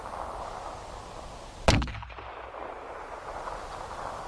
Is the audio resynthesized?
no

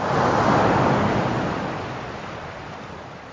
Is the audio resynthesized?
no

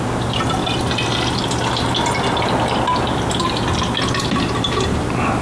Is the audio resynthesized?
no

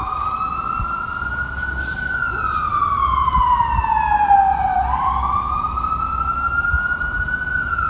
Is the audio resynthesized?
no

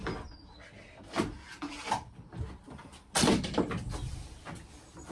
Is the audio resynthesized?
no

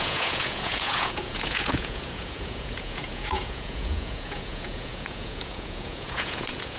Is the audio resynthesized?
yes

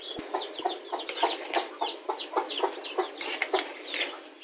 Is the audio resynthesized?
no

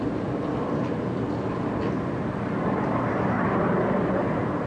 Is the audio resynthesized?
no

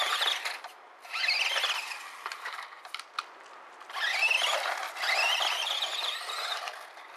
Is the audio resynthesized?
no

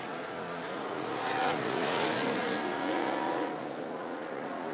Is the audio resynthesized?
yes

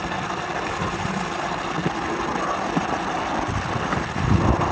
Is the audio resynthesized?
no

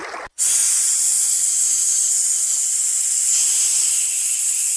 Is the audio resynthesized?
no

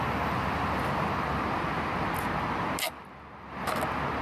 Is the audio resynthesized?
no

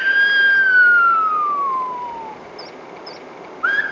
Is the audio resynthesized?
no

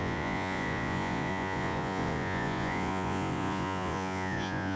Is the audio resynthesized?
yes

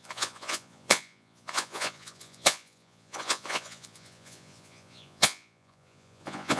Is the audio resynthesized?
yes